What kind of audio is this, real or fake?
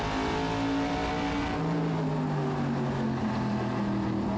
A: real